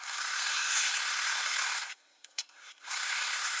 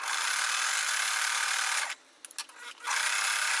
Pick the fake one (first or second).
first